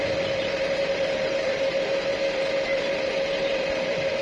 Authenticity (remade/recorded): remade